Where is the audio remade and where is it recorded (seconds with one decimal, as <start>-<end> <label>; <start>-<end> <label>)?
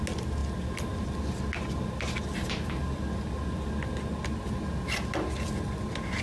0.0-6.2 recorded